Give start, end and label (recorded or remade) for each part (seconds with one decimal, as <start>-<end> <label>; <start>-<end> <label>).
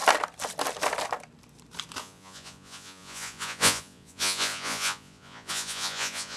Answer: 0.0-2.0 recorded; 2.0-6.4 remade